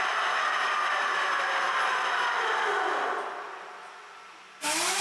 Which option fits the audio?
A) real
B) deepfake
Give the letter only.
A